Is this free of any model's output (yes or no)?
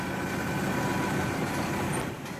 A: yes